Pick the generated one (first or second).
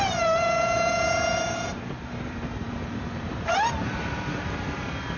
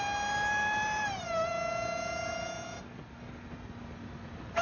first